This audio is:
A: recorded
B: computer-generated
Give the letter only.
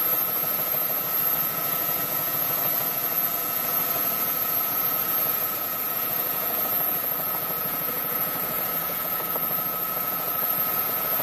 B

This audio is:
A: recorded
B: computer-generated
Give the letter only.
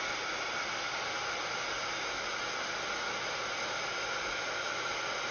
A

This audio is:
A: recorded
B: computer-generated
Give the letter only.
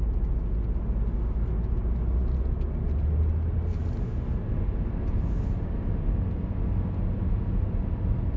A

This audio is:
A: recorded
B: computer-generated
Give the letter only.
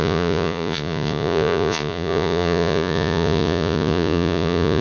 B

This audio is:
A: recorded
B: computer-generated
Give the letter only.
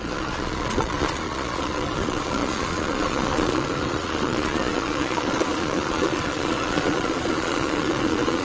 B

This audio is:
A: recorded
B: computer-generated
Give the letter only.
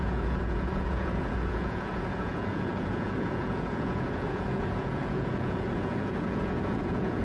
B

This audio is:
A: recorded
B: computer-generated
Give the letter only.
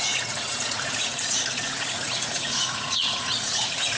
B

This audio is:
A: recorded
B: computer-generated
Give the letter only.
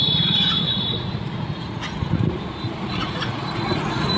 B